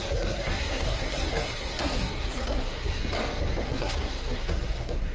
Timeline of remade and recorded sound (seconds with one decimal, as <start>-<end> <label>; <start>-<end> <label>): 0.0-3.0 remade; 3.0-3.6 recorded; 3.6-5.1 remade